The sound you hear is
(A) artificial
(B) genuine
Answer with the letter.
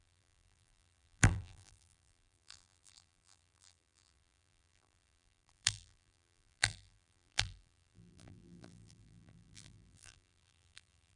A